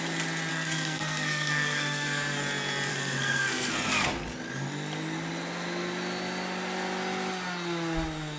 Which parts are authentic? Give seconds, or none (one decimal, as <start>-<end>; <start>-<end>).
0.0-0.5; 2.4-2.9; 3.7-8.4